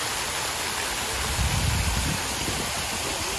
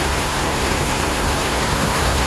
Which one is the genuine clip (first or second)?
first